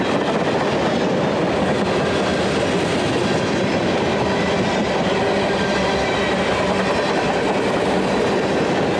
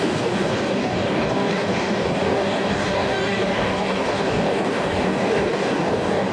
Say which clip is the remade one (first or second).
second